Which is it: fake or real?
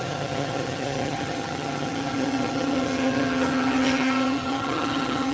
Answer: fake